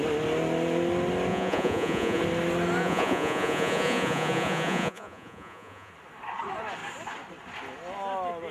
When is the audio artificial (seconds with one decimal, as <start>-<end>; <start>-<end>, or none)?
1.3-2.2; 2.8-5.9

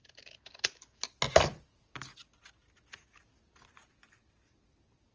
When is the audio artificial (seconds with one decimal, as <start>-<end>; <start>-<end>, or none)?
none

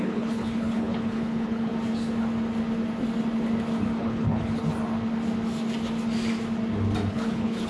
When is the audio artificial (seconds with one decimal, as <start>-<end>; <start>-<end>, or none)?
0.0-1.7; 4.0-4.6; 7.1-7.7

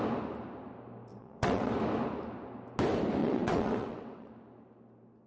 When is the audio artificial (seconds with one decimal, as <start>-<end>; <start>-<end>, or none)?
1.1-1.7; 3.2-4.3

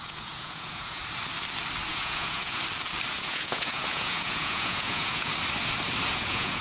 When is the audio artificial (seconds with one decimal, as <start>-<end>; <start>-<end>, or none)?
0.0-1.0; 1.9-2.6; 3.1-5.3; 6.1-6.6

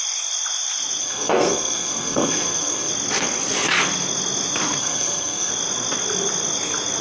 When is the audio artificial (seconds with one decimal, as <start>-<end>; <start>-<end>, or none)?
1.0-2.9; 4.8-5.5

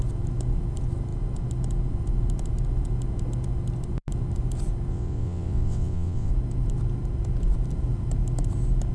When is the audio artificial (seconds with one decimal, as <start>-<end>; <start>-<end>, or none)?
4.9-6.3

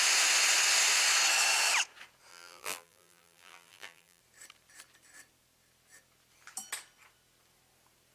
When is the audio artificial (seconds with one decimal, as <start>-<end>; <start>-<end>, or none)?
2.3-4.2